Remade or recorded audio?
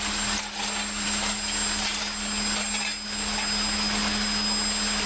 recorded